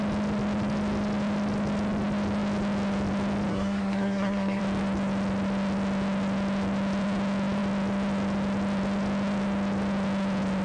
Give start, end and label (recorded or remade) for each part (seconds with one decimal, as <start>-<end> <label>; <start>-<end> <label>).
0.0-3.5 recorded; 3.5-4.6 remade; 4.6-10.6 recorded